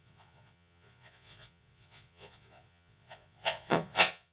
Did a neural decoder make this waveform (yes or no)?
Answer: yes